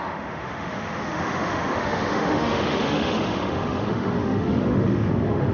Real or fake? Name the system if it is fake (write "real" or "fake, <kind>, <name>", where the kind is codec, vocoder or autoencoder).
fake, autoencoder, DAC-VAE